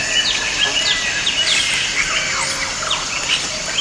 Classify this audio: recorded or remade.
recorded